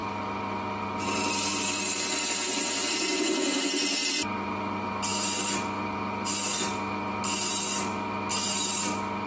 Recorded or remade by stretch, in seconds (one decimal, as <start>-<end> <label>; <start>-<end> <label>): 0.0-9.3 recorded